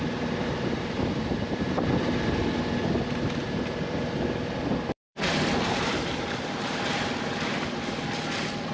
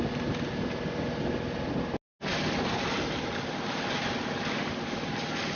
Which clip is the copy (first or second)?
first